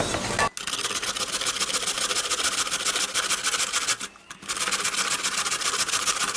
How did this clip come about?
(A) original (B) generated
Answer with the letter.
A